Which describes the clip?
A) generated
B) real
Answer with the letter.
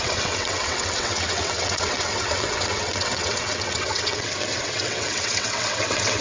A